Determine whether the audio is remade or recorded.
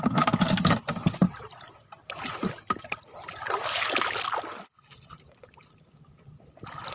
recorded